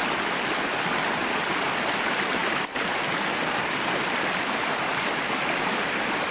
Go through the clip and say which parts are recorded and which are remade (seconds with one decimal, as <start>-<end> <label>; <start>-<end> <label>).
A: 0.0-2.4 remade; 2.4-6.3 recorded